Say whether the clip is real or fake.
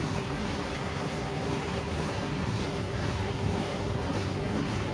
fake